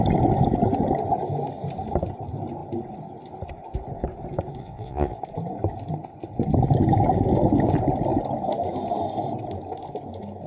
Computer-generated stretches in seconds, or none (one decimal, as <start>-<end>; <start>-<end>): 4.6-5.2